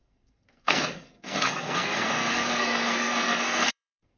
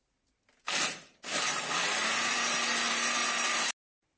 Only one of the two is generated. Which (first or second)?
first